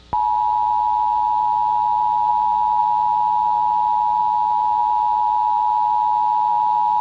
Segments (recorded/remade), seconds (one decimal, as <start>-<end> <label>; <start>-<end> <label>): 0.0-4.2 recorded; 4.2-4.8 remade; 4.8-7.0 recorded